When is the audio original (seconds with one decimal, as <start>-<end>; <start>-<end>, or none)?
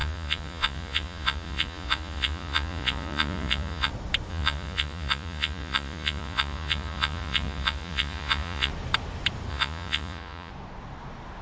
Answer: 3.9-4.3; 8.7-9.5; 10.5-11.4